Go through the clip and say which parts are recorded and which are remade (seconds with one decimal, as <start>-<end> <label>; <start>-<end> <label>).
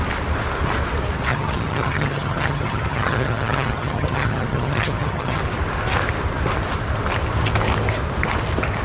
0.0-1.3 recorded; 1.3-5.4 remade; 5.4-8.8 recorded